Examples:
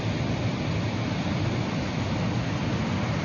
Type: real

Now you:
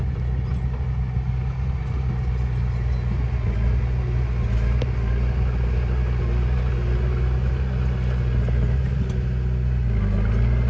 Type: real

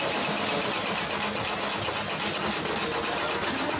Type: real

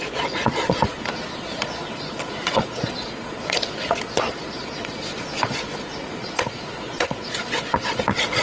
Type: fake